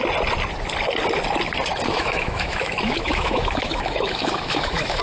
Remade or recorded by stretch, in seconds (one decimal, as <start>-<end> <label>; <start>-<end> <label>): 0.0-1.9 recorded; 1.9-5.0 remade